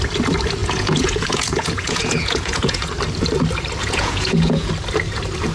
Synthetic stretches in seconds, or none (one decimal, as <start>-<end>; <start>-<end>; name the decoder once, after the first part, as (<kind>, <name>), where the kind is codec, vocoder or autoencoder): 0.6-2.9 (vocoder, Vocos); 3.8-4.7